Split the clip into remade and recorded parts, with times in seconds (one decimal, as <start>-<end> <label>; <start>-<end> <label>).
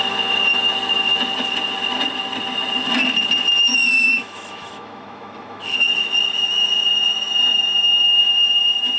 0.0-3.7 recorded; 3.7-8.2 remade; 8.2-9.0 recorded